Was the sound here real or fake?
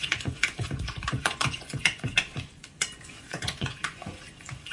fake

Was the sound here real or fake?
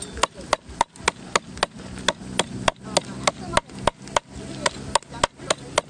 real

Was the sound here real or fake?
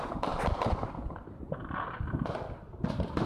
real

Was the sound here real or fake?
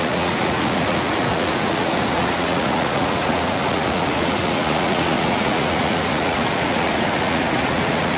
fake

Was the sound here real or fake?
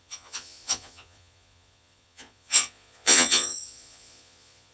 fake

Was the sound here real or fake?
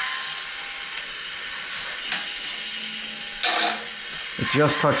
real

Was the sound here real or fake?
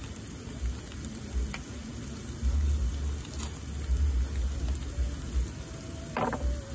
real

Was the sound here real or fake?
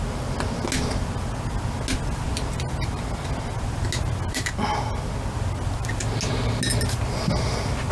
real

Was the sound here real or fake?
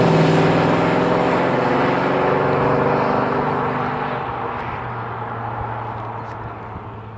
real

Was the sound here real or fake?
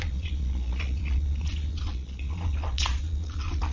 fake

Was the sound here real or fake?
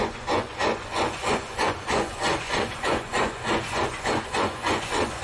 fake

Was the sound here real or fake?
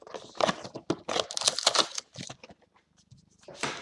real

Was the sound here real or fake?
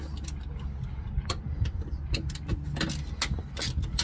real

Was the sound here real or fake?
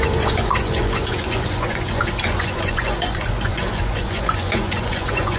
fake